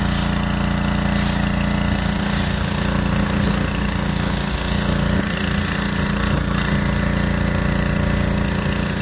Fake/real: real